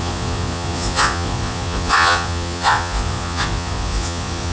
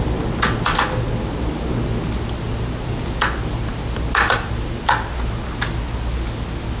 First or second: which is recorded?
second